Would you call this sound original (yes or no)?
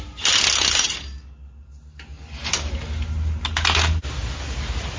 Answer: yes